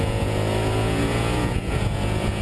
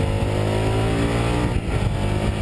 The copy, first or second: first